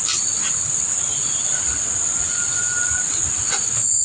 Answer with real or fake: real